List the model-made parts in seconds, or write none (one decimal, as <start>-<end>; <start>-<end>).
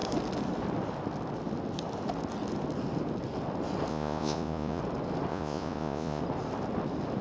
3.9-4.8; 5.3-6.2